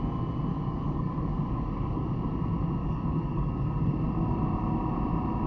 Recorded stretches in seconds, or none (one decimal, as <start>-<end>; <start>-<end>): 0.0-0.5; 2.1-2.8; 3.9-5.5